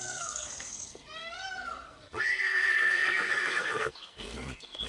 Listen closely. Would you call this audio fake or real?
fake